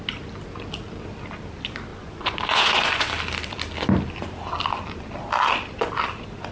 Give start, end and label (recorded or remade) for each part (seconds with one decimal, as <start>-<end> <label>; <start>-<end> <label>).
0.0-1.9 recorded; 1.9-3.1 remade; 3.1-6.5 recorded